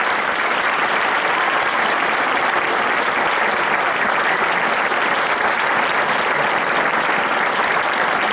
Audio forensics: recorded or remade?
recorded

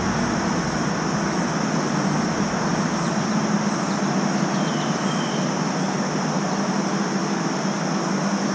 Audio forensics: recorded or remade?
recorded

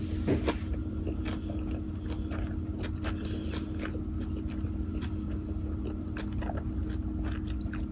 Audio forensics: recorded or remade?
recorded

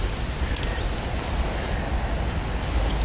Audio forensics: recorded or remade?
recorded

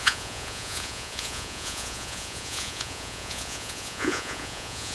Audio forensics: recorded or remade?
remade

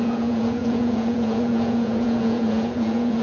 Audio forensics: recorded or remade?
remade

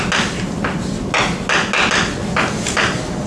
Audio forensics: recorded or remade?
recorded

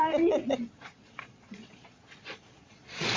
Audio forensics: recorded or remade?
remade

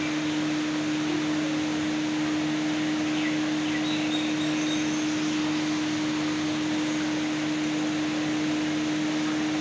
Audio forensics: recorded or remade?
recorded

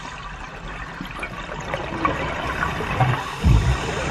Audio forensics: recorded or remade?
recorded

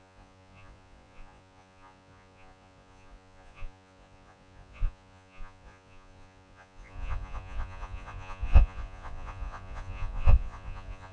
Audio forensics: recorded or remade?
remade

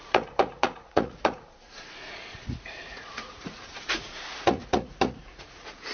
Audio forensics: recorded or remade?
remade